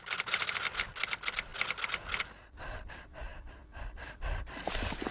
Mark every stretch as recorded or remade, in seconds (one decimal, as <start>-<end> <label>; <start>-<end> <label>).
0.0-5.1 recorded